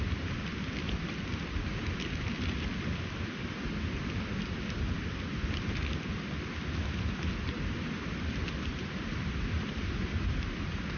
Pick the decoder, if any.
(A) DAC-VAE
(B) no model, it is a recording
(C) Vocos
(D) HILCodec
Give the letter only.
B